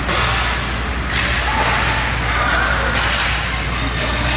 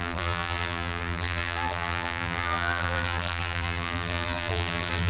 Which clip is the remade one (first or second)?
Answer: second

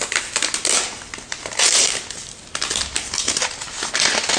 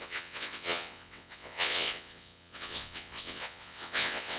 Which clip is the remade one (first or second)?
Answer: second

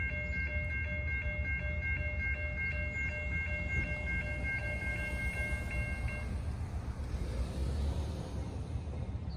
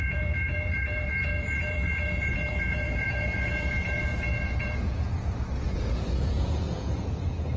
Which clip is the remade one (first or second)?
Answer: second